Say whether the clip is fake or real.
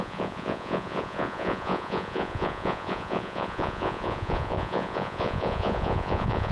fake